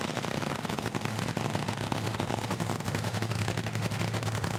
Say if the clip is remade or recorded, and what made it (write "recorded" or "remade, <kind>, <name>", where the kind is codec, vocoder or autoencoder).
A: remade, autoencoder, DAC-VAE